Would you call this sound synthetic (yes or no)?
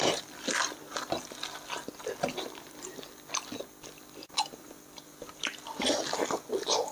no